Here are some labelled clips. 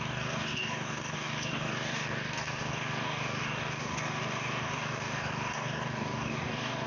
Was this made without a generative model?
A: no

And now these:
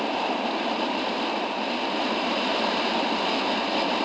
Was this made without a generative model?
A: yes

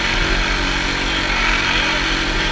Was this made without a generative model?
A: yes